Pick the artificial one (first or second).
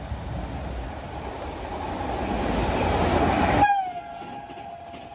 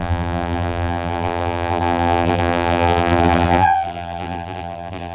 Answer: second